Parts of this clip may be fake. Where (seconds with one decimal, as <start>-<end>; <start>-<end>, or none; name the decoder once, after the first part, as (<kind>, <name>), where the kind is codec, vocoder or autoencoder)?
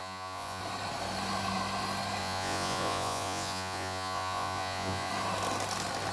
0.0-0.6 (vocoder, Vocos); 2.2-5.1